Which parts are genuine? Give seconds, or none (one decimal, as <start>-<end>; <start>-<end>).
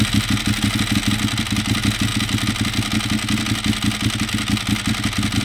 0.0-5.4